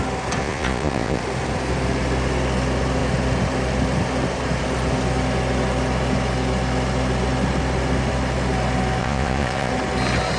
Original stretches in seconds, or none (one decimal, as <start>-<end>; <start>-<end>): 0.0-0.4; 1.2-9.0; 9.7-10.4